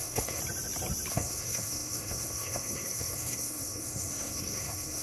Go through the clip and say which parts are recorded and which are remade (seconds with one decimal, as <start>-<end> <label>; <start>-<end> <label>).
0.0-0.4 remade; 0.4-1.1 recorded; 1.1-5.0 remade